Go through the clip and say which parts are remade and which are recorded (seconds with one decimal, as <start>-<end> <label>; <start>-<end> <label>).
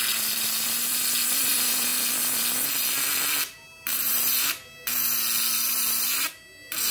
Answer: 0.0-6.9 remade